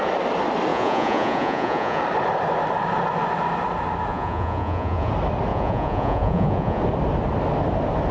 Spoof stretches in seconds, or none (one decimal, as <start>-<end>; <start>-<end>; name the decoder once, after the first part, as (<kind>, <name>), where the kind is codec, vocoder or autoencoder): 0.7-2.0 (vocoder, Vocos); 4.1-5.1; 5.5-6.8